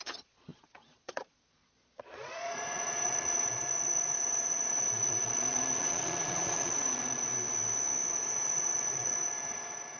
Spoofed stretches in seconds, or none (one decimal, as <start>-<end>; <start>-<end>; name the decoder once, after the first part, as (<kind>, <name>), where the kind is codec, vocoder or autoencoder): 0.0-7.3 (vocoder, Vocos); 8.1-10.0